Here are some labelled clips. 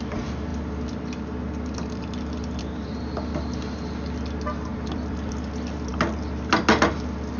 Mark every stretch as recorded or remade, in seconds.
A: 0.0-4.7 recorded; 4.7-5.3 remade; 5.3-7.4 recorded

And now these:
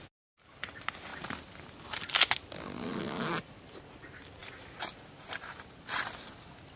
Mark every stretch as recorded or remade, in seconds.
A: 0.0-6.8 recorded

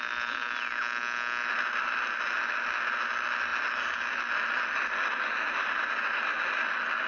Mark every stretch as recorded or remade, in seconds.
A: 0.0-7.1 recorded

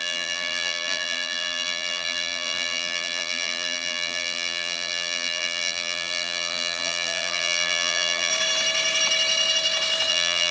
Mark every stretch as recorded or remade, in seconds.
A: 0.0-8.3 remade; 8.3-10.1 recorded; 10.1-10.5 remade

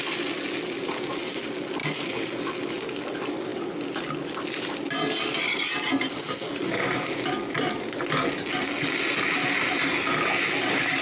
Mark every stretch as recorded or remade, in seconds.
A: 0.0-1.8 recorded; 1.8-2.3 remade; 2.3-3.5 recorded; 3.5-4.0 remade; 4.0-11.0 recorded

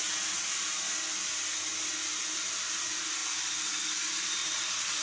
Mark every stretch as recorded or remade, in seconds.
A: 0.0-1.7 recorded; 1.7-2.5 remade; 2.5-3.2 recorded; 3.2-3.8 remade; 3.8-4.4 recorded; 4.4-5.0 remade

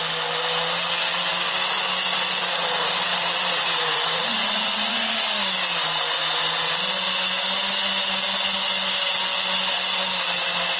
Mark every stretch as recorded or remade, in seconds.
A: 0.0-3.1 recorded; 3.1-4.6 remade; 4.6-10.8 recorded